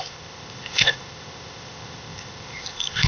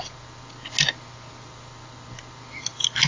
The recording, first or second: second